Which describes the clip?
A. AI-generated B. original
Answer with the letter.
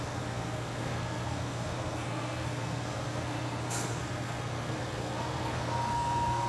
A